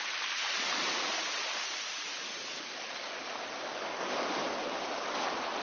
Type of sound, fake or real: real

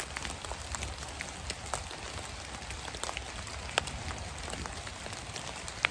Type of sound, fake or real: real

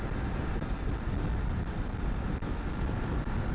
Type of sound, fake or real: fake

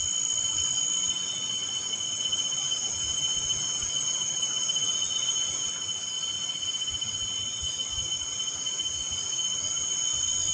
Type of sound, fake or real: real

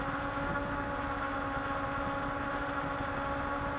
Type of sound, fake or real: real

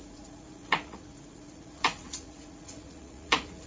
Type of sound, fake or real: fake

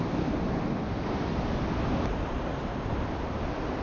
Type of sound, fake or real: real